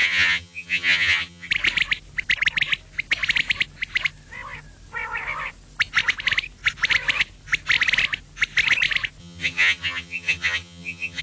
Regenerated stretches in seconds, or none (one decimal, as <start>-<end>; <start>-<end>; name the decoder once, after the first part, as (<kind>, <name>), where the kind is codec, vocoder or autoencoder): 0.0-1.5 (vocoder, HiFi-GAN); 9.2-11.2